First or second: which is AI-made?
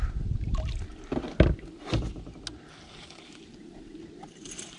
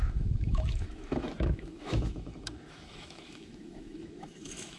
second